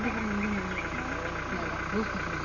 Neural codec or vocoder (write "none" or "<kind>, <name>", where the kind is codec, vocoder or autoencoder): none